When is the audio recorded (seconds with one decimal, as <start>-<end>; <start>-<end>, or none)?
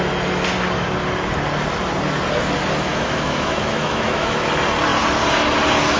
0.0-2.9; 4.5-6.0